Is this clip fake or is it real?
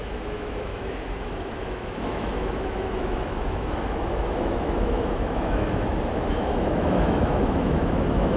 fake